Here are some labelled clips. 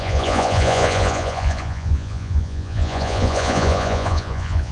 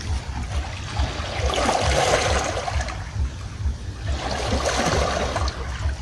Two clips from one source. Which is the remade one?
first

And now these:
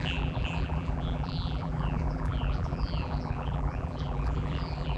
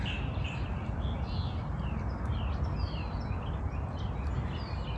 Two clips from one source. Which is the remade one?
first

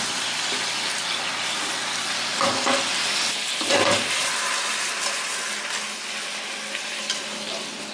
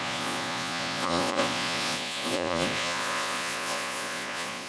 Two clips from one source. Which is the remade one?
second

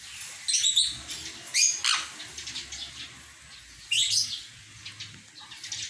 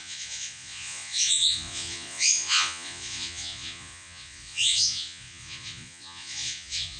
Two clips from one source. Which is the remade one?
second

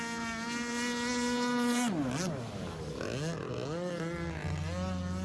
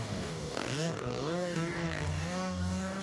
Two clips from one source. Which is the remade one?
second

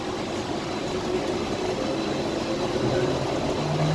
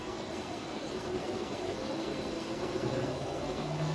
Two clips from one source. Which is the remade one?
second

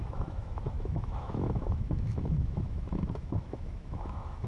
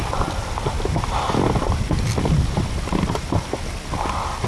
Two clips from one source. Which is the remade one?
first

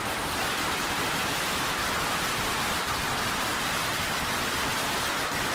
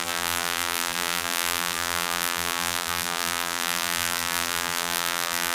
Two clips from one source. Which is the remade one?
second